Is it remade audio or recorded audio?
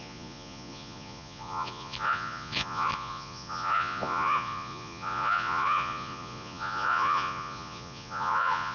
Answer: remade